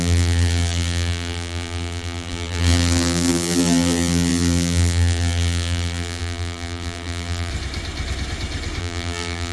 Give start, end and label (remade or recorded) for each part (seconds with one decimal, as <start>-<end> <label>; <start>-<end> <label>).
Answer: 0.0-7.5 remade; 7.5-8.8 recorded; 8.8-9.5 remade

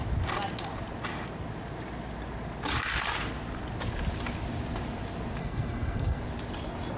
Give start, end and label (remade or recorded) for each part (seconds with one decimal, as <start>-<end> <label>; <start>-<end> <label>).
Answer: 0.0-5.4 recorded; 5.4-6.2 remade; 6.2-7.0 recorded

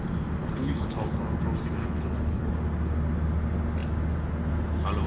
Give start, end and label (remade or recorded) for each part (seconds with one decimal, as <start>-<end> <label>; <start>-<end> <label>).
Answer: 0.0-0.4 recorded; 0.4-1.2 remade; 1.2-1.8 recorded; 1.8-2.5 remade; 2.5-5.1 recorded

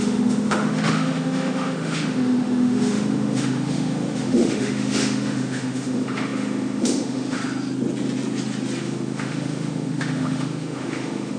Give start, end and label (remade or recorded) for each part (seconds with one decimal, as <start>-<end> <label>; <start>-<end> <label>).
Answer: 0.0-7.4 remade; 7.4-8.8 recorded; 8.8-11.4 remade

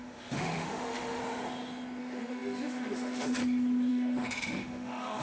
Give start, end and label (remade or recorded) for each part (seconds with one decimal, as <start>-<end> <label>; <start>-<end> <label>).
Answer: 0.0-1.2 remade; 1.2-2.0 recorded; 2.0-3.4 remade; 3.4-3.9 recorded; 3.9-5.2 remade

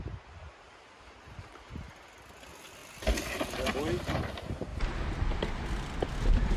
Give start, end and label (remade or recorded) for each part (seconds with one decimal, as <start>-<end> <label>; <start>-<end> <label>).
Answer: 0.0-6.6 recorded